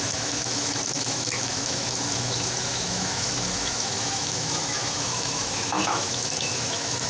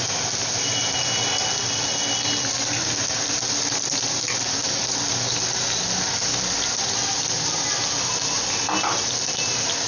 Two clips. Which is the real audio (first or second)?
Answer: second